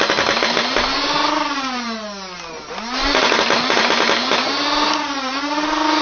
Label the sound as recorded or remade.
recorded